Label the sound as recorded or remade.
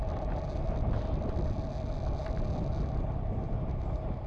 recorded